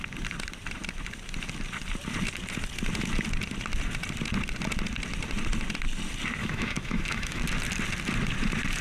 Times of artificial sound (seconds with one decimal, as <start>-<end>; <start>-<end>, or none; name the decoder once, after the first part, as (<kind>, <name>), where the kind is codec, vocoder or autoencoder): 6.4-7.4 (autoencoder, DAC-VAE)